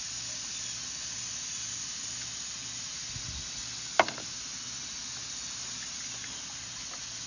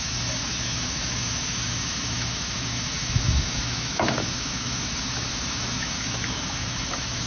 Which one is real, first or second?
first